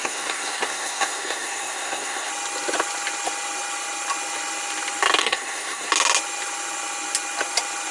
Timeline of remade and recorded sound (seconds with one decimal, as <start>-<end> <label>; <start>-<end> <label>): 0.0-2.3 remade; 2.3-5.2 recorded; 5.2-5.9 remade; 5.9-7.9 recorded